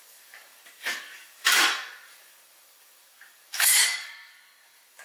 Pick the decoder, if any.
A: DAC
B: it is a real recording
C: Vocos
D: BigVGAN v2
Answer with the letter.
A